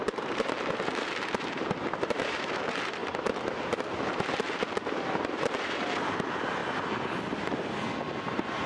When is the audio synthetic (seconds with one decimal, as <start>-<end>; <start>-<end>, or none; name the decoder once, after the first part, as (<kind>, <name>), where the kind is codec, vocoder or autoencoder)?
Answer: 0.0-6.6 (vocoder, BigVGAN v2); 8.2-8.7